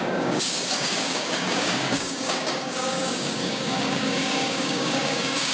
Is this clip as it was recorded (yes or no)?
no